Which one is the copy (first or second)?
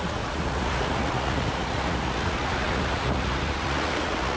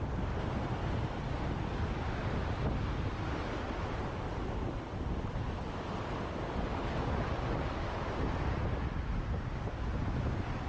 first